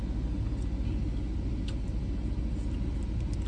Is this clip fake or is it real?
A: real